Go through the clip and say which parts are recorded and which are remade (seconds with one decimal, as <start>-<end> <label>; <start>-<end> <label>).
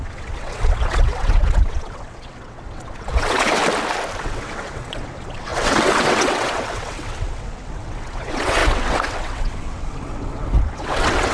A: 0.0-3.6 remade; 3.6-4.2 recorded; 4.2-11.3 remade